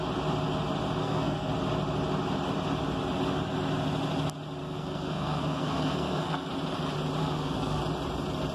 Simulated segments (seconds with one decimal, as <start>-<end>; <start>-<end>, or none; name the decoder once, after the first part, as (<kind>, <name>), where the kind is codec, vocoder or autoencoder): 1.0-1.5 (codec, SNAC); 4.6-6.5; 7.2-7.8